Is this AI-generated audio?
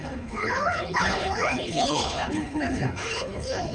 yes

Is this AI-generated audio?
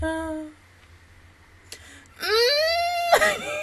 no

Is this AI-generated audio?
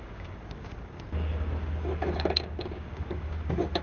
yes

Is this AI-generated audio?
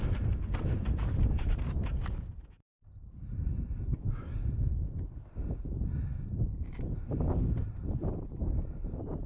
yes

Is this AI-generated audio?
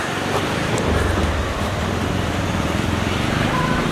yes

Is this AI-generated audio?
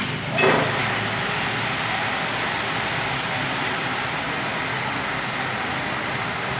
no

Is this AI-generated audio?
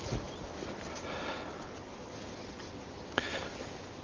no